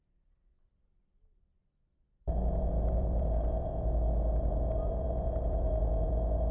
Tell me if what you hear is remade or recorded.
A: recorded